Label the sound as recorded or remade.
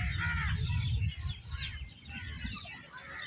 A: recorded